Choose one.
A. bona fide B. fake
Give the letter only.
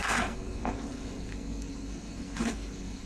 B